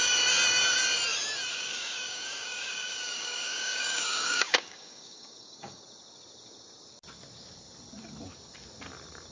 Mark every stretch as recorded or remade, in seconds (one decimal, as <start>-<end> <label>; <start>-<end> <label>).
0.0-1.5 recorded; 1.5-5.8 remade; 5.8-9.3 recorded